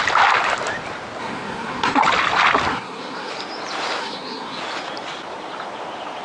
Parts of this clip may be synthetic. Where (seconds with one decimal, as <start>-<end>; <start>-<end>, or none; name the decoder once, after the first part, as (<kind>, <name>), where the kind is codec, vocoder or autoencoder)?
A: 1.2-2.0 (codec, SNAC); 2.7-3.3; 4.0-4.6